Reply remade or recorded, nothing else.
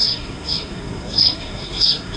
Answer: remade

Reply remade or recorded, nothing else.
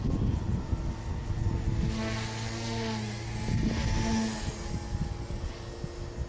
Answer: recorded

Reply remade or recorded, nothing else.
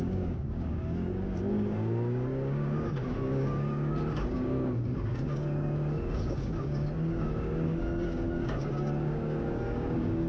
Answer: remade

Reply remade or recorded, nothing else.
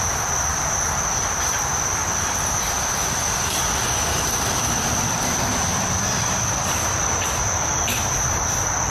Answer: remade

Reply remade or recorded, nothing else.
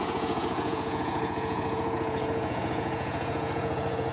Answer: remade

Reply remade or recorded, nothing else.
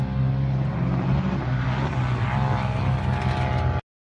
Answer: recorded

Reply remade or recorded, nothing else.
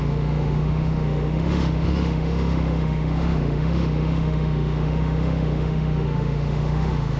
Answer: remade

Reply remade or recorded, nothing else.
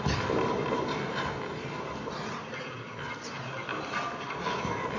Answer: recorded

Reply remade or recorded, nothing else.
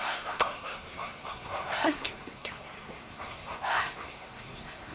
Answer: remade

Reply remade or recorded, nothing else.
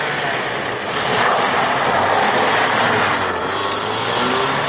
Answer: recorded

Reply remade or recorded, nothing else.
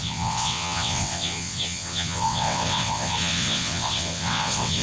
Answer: remade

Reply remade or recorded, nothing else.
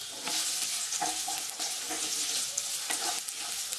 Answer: recorded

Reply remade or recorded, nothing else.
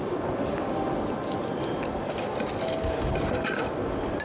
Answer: recorded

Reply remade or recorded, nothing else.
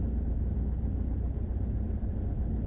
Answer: recorded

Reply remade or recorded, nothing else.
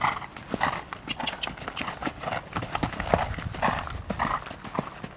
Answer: recorded